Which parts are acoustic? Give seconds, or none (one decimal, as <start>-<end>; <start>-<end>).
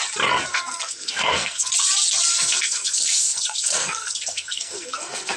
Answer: 0.0-0.5; 1.7-2.3